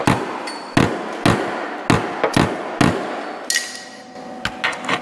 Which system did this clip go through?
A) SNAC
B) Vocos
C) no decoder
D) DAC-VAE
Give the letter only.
C